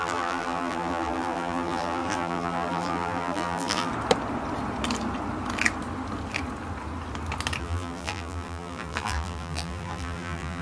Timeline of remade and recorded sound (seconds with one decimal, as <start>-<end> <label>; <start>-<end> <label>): 0.0-3.9 remade; 3.9-7.6 recorded; 7.6-10.6 remade